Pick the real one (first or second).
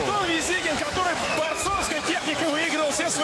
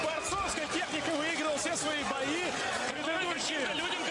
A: second